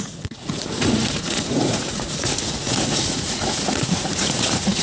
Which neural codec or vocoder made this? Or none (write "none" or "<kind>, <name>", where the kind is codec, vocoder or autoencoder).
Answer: vocoder, Vocos